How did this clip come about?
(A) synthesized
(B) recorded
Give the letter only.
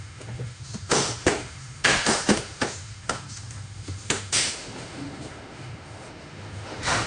A